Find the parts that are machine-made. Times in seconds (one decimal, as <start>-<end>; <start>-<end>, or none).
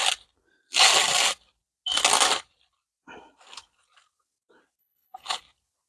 4.8-5.4